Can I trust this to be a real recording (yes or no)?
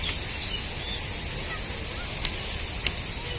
yes